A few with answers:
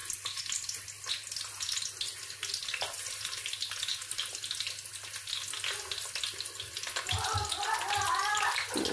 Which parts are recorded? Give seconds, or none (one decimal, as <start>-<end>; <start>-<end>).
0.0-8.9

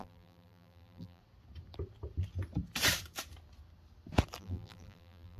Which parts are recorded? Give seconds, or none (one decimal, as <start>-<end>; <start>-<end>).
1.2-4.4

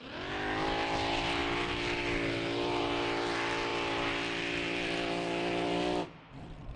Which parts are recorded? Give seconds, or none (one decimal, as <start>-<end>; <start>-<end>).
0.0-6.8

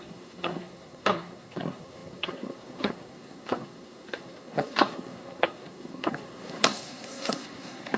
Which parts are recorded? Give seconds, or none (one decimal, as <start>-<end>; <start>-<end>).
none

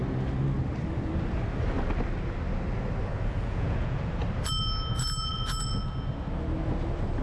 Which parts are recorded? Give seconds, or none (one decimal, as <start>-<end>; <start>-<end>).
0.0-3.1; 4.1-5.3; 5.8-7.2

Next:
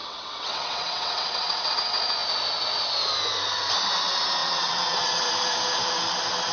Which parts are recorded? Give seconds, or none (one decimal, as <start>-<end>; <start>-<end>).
1.7-4.4; 5.3-6.5